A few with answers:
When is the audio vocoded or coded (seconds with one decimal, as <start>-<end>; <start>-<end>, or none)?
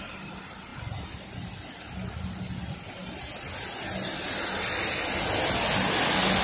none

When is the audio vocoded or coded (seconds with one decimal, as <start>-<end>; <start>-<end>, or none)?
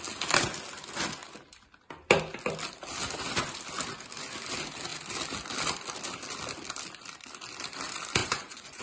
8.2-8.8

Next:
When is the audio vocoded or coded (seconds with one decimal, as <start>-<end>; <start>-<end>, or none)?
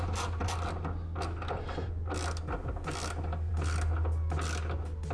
none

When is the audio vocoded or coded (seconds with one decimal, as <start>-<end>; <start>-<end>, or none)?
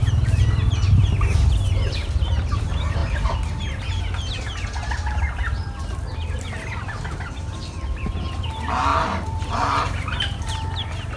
0.0-0.6; 3.0-4.0; 6.1-7.6; 8.9-11.2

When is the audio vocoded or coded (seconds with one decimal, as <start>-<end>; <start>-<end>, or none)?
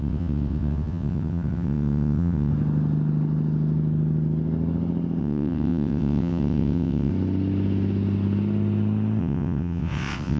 0.0-2.5; 5.2-7.1; 9.2-10.4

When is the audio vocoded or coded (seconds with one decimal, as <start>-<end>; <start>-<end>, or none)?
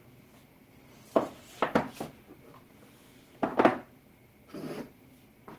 none